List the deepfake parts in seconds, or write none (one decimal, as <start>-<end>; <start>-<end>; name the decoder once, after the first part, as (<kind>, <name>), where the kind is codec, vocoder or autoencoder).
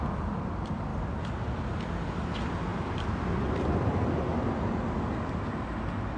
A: 2.7-3.3 (vocoder, BigVGAN v2)